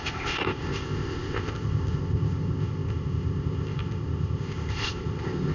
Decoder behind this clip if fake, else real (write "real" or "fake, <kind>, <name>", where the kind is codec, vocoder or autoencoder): fake, codec, ZipCodec